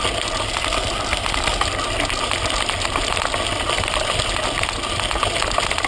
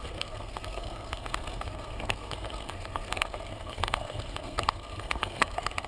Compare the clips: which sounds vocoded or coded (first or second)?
second